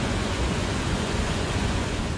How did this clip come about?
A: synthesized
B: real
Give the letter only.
A